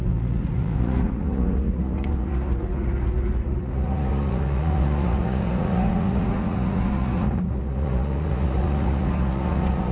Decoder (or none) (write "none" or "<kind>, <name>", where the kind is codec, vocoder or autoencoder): vocoder, Vocos